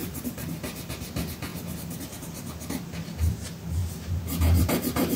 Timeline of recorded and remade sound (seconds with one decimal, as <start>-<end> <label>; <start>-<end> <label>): 0.0-0.9 remade; 0.9-1.5 recorded; 1.5-2.5 remade; 2.5-3.8 recorded; 3.8-5.2 remade